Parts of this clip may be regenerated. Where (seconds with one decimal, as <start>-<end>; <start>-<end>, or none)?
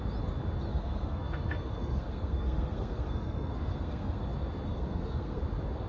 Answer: 0.7-4.2; 4.7-5.4